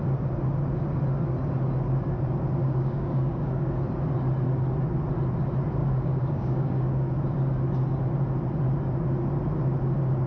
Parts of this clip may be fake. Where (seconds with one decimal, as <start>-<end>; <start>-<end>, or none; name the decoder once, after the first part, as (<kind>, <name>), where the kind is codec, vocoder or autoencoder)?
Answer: 2.6-3.7 (codec, DAC); 5.8-7.2